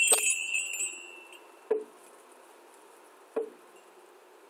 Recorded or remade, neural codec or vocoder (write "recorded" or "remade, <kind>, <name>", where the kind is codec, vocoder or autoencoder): recorded